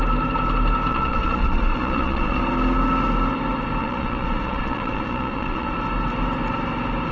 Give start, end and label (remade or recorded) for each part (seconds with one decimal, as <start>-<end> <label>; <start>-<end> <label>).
0.0-0.9 recorded; 0.9-2.4 remade; 2.4-3.8 recorded; 3.8-5.7 remade; 5.7-7.1 recorded